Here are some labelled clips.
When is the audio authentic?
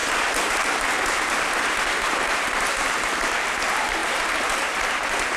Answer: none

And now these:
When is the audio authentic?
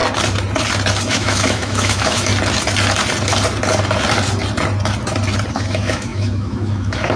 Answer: 0.0-1.1; 2.3-5.5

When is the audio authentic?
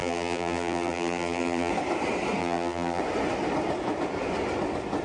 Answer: 1.7-2.4; 3.0-5.0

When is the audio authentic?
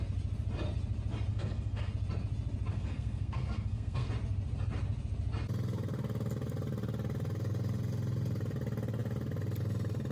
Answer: 0.0-1.3; 1.9-2.7; 4.1-10.1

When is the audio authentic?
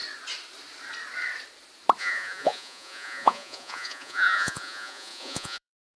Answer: 0.0-2.0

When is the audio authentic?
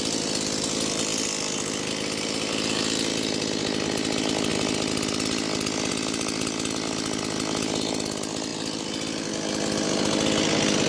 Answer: 0.0-10.9